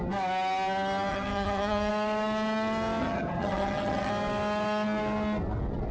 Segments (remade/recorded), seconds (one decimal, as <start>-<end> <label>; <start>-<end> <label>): 0.0-1.1 recorded; 1.1-1.9 remade; 1.9-3.0 recorded; 3.0-4.1 remade; 4.1-5.9 recorded